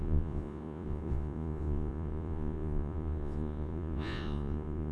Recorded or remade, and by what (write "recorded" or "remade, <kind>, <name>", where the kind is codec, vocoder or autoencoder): remade, vocoder, Vocos